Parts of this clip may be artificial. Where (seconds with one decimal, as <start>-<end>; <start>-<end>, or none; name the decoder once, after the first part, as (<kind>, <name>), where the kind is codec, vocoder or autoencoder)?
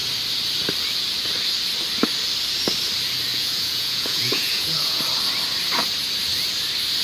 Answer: 3.3-5.0 (vocoder, Vocos)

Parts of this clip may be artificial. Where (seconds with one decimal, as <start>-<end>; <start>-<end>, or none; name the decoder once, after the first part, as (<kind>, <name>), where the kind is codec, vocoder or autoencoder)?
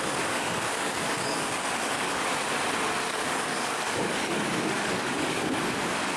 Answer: 0.0-2.2 (codec, DAC); 3.1-6.2